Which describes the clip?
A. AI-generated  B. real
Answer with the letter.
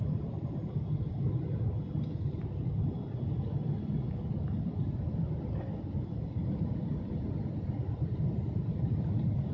B